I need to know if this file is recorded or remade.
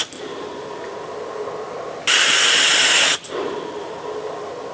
recorded